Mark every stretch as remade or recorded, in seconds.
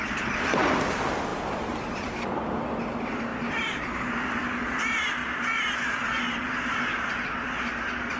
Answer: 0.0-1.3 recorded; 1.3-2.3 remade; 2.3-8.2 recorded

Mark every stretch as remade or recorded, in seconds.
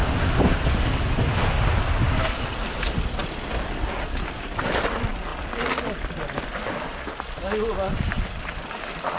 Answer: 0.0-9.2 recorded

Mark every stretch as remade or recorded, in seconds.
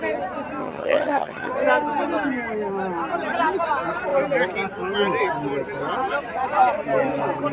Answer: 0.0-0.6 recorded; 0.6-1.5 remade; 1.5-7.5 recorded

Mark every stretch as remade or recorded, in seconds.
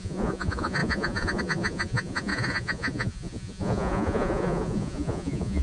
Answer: 0.0-5.6 remade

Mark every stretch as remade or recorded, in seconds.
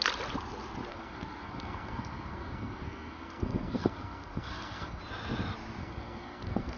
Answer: 0.0-0.9 recorded; 0.9-5.0 remade; 5.0-5.8 recorded; 5.8-6.8 remade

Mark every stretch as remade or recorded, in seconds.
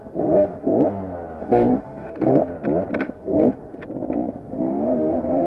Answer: 0.0-0.7 remade; 0.7-1.4 recorded; 1.4-2.5 remade; 2.5-3.0 recorded; 3.0-3.8 remade; 3.8-4.3 recorded; 4.3-5.5 remade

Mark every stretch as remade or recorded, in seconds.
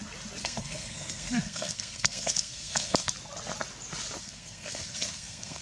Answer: 0.0-0.4 recorded; 0.4-3.1 remade; 3.1-4.2 recorded; 4.2-5.6 remade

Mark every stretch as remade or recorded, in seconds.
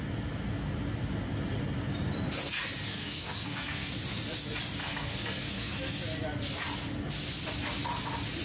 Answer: 0.0-2.9 recorded; 2.9-3.9 remade; 3.9-4.8 recorded; 4.8-6.0 remade; 6.0-8.4 recorded